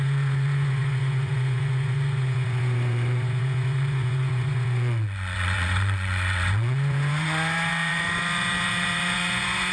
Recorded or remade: remade